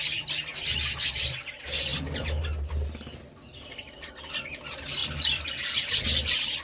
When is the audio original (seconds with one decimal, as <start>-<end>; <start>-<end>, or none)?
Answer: 0.0-5.0; 5.9-6.6